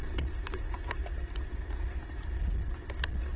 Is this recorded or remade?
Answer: recorded